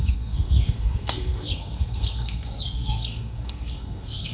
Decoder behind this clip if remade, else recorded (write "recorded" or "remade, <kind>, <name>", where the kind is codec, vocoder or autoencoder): remade, codec, SNAC